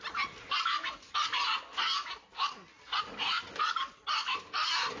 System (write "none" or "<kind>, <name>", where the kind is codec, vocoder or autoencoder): none